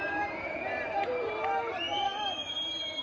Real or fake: fake